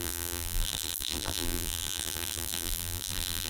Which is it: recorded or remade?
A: remade